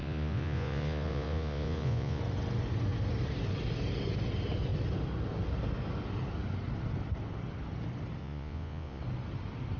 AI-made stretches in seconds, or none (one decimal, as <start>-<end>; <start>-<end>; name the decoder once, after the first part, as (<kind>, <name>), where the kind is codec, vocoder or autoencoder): 0.0-2.2 (vocoder, Vocos); 8.2-9.0